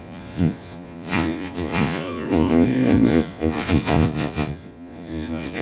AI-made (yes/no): yes